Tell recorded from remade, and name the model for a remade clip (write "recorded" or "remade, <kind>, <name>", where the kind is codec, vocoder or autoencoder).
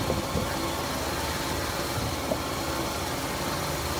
recorded